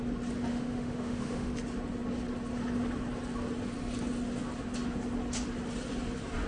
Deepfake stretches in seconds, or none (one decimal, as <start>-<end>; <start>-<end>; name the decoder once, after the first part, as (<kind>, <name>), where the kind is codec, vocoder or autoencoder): 0.5-1.5 (autoencoder, DAC-VAE)